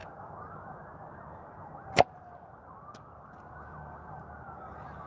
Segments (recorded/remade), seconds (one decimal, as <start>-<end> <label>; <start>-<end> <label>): 0.0-5.1 recorded